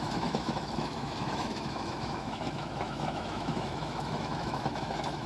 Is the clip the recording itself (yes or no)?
no